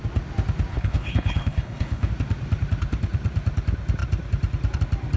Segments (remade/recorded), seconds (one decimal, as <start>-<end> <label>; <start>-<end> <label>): 0.0-0.7 recorded; 0.7-2.1 remade; 2.1-5.2 recorded